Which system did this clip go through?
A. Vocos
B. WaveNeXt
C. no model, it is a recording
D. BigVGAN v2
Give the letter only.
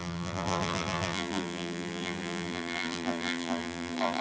D